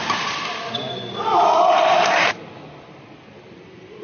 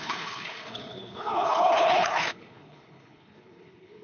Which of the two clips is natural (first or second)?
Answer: first